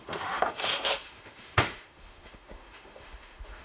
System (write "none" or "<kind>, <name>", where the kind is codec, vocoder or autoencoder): autoencoder, DAC-VAE